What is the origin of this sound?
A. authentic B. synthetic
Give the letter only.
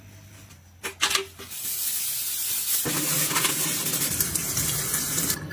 A